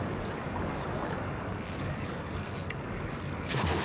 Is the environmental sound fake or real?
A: fake